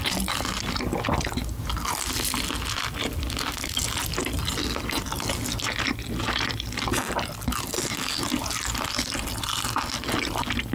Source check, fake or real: real